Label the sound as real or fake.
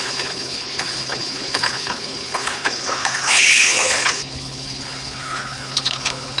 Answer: fake